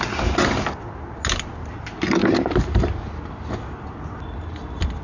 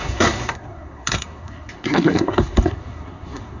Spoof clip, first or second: second